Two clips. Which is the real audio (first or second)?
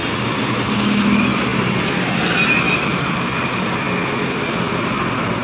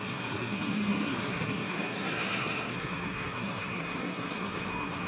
first